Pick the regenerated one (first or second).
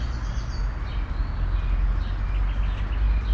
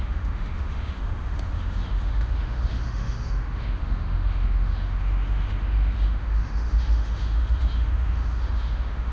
second